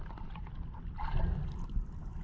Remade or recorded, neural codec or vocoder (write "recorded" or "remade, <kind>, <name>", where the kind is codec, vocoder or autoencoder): recorded